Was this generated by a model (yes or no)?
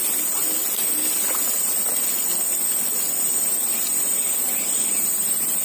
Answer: no